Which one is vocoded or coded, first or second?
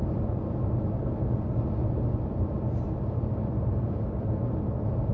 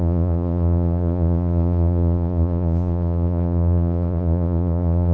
second